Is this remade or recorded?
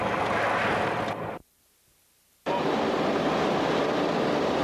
recorded